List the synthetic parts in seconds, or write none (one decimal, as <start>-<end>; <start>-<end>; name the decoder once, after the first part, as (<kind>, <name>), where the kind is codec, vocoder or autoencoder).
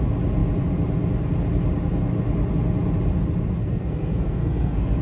3.6-5.0 (codec, SNAC)